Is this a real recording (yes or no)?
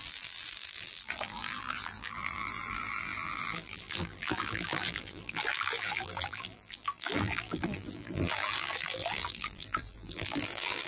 no